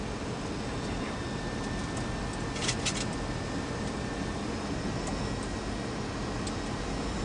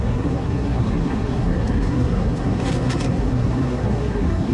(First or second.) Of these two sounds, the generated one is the second